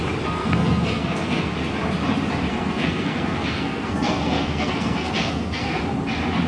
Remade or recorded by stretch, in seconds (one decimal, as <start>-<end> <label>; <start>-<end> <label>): 0.0-0.4 recorded; 0.4-1.5 remade; 1.5-2.5 recorded; 2.5-5.8 remade; 5.8-6.5 recorded